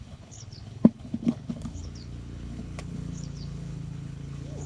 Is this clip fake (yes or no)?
yes